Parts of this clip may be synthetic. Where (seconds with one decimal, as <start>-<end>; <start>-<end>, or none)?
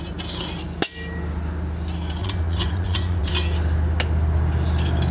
2.2-3.3